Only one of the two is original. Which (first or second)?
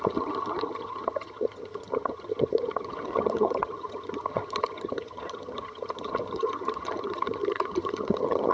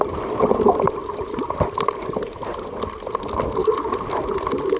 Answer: second